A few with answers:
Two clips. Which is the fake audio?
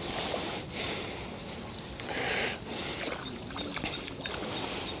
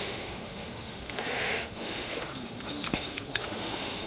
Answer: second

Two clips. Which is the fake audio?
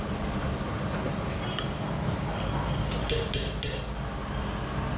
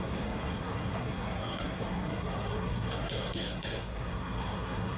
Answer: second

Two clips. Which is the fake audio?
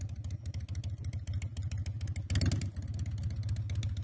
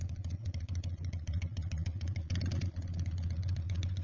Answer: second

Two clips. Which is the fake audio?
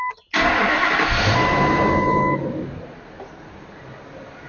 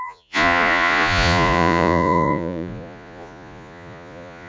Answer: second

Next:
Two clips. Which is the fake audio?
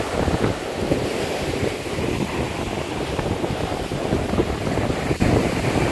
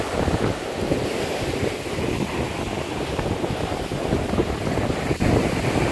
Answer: first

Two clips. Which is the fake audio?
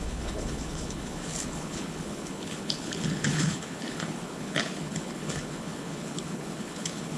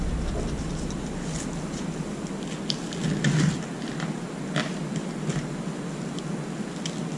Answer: first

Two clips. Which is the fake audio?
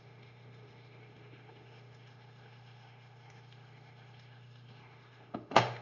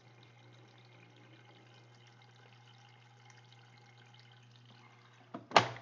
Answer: first